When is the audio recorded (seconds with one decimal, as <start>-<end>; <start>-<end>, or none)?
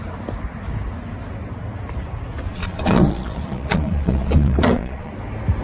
0.0-2.5; 5.1-5.6